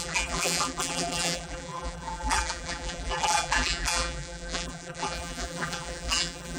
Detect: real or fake fake